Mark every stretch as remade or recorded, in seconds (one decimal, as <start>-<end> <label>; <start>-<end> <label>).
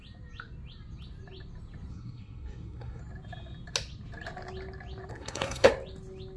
0.0-1.9 recorded; 1.9-3.0 remade; 3.0-5.1 recorded; 5.1-5.7 remade; 5.7-6.4 recorded